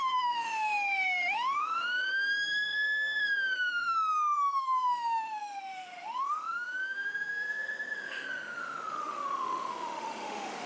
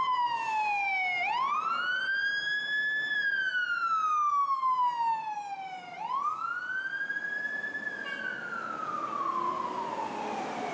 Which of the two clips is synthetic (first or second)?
first